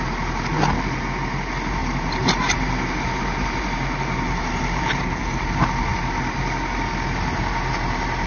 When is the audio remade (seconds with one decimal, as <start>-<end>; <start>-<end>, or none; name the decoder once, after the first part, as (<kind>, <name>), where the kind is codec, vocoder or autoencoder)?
1.8-5.2 (vocoder, BigVGAN v2)